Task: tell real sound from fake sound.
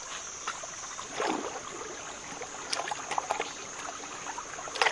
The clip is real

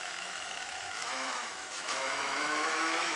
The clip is fake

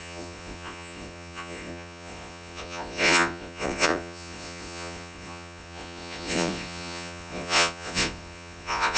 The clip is fake